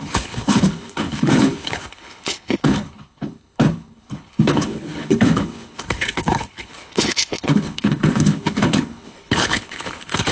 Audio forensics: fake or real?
fake